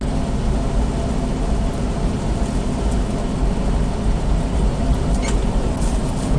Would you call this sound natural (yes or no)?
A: yes